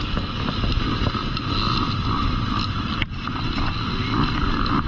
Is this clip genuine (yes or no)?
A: yes